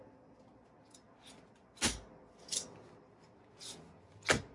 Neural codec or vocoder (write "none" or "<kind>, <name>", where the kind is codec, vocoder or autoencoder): none